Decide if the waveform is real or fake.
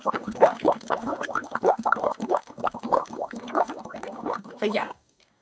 fake